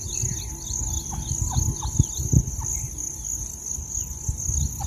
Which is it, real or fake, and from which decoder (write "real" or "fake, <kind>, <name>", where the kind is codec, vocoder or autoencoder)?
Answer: real